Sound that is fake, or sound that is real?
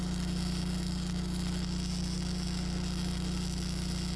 real